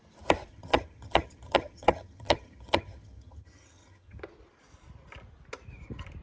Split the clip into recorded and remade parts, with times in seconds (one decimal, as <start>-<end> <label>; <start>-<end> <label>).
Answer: 0.0-0.5 recorded; 0.5-4.2 remade; 4.2-6.2 recorded